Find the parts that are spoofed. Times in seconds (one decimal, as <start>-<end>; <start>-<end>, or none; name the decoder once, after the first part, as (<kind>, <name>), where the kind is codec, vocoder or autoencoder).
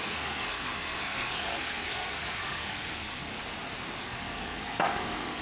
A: 0.0-3.3 (codec, SNAC); 4.0-5.4